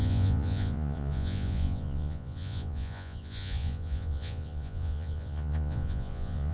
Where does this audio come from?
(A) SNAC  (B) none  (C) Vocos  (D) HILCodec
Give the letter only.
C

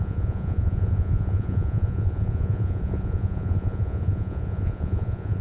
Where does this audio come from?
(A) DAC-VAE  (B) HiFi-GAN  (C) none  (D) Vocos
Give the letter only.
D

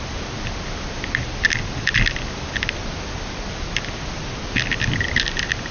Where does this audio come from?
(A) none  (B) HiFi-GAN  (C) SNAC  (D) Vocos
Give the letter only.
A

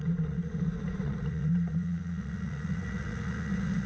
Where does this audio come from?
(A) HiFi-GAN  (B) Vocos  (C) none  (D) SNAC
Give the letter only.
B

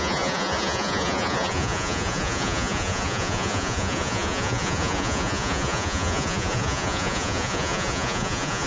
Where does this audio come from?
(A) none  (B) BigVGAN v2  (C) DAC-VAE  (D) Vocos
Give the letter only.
D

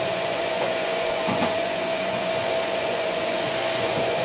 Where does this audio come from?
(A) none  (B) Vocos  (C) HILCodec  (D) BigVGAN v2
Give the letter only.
B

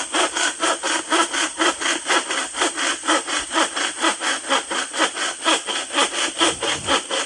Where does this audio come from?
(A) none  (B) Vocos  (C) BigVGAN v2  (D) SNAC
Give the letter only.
A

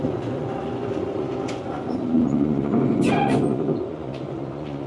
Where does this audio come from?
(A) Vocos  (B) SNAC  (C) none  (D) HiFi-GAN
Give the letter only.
A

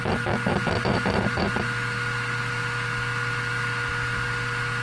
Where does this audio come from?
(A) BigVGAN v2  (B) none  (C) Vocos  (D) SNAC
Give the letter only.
B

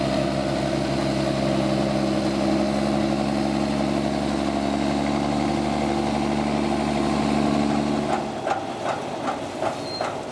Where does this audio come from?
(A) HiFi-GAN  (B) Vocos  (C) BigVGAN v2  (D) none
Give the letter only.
D